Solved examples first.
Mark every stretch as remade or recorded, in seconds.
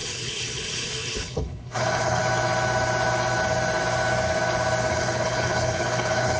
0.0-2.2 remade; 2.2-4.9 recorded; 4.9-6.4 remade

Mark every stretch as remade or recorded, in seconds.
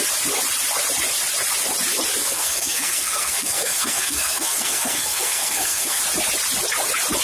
0.0-2.2 recorded; 2.2-6.0 remade; 6.0-7.2 recorded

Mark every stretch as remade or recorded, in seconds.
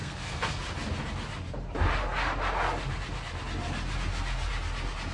0.0-0.6 remade; 0.6-5.1 recorded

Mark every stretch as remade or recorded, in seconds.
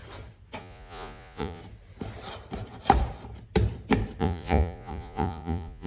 0.0-0.6 recorded; 0.6-1.6 remade; 1.6-4.2 recorded; 4.2-5.9 remade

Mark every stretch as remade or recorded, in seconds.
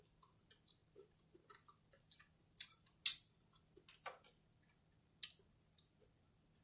0.0-6.6 recorded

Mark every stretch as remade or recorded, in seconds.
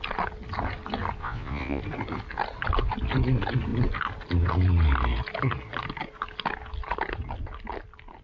0.0-1.2 recorded; 1.2-1.8 remade; 1.8-8.2 recorded